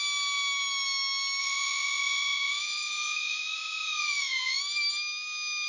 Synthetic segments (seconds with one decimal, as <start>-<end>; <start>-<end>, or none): 1.4-4.6